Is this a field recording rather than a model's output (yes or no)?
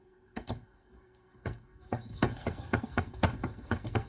no